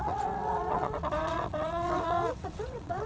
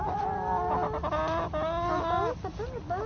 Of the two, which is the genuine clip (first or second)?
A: second